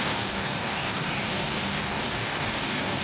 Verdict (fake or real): fake